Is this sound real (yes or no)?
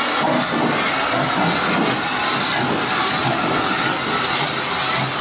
yes